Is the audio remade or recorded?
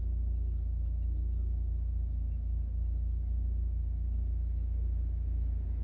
recorded